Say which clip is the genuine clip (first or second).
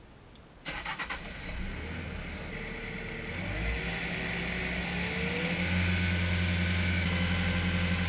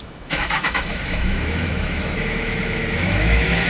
first